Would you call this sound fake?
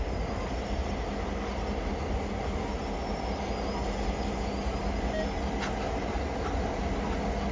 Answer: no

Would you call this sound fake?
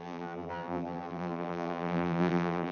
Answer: yes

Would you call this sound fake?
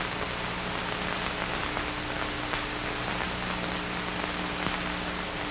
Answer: no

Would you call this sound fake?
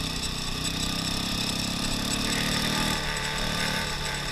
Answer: yes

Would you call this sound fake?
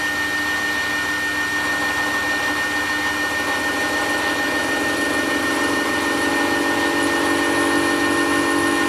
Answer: no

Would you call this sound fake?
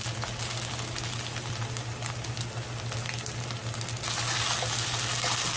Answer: no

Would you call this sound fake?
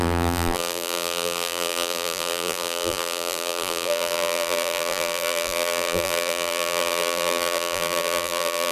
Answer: yes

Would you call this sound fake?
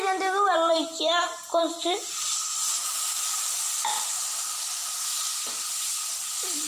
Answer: yes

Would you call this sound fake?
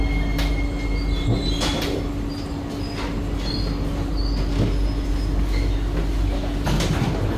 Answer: no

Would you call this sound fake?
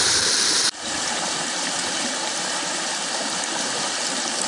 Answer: yes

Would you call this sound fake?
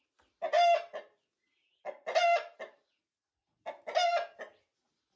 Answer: no